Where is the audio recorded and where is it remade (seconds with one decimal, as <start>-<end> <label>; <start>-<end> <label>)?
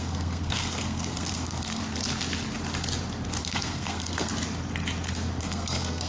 0.0-1.8 remade; 1.8-3.4 recorded; 3.4-4.3 remade; 4.3-5.4 recorded; 5.4-6.1 remade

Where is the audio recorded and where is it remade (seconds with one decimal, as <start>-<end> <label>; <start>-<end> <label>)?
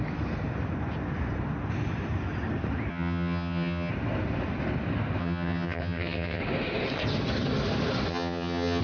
0.0-2.9 recorded; 2.9-3.9 remade; 3.9-5.2 recorded; 5.2-6.4 remade; 6.4-8.1 recorded; 8.1-8.8 remade